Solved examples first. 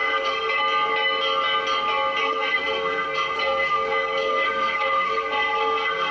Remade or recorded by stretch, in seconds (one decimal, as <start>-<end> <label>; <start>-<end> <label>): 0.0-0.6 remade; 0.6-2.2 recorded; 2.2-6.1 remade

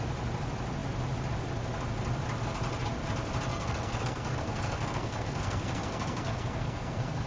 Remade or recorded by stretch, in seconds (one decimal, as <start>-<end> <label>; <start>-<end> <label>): 0.0-3.5 recorded; 3.5-7.3 remade

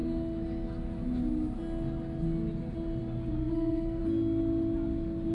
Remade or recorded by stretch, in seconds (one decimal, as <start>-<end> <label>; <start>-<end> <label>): 0.0-3.4 recorded; 3.4-4.0 remade; 4.0-5.3 recorded